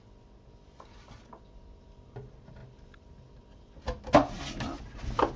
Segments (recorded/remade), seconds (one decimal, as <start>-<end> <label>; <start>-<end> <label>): 0.0-5.4 recorded

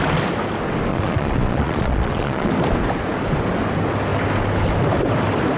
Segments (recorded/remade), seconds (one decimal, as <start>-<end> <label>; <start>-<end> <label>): 0.0-0.9 recorded; 0.9-2.5 remade; 2.5-5.6 recorded

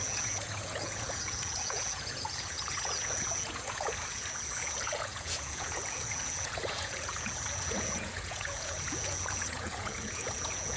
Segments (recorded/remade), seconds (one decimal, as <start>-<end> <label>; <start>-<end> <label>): 0.0-10.8 remade

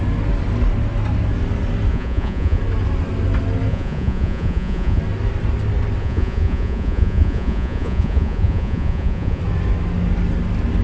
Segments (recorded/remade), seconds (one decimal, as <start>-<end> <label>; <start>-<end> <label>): 0.0-1.9 recorded; 1.9-2.6 remade; 2.6-3.7 recorded; 3.7-5.0 remade; 5.0-6.0 recorded; 6.0-9.4 remade; 9.4-10.8 recorded